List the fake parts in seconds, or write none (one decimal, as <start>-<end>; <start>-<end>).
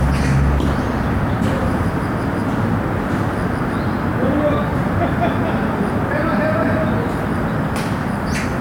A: none